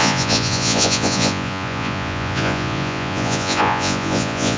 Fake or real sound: fake